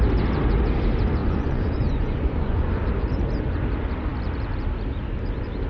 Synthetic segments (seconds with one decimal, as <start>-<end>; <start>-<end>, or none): 1.2-2.7